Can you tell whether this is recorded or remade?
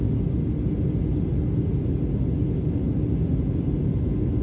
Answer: recorded